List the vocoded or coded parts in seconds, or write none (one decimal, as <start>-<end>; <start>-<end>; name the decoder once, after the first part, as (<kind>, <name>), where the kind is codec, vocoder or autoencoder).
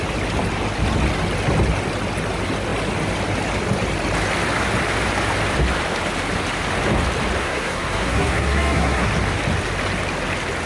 7.4-9.1 (codec, SNAC)